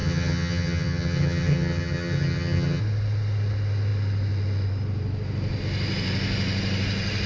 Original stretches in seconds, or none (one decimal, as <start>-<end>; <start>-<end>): 2.8-7.3